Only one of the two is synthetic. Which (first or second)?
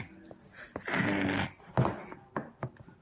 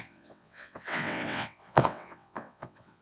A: second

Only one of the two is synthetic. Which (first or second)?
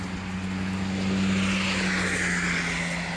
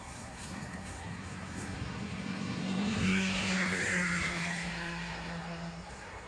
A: second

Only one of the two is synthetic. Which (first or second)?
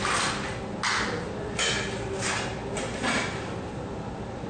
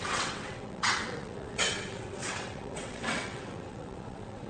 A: second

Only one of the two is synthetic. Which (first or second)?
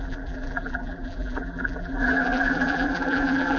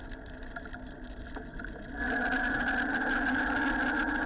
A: first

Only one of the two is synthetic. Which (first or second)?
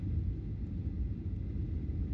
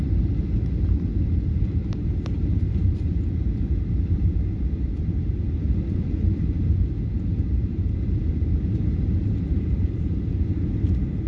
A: second